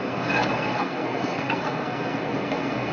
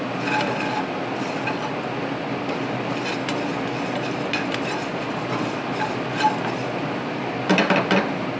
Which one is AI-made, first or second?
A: first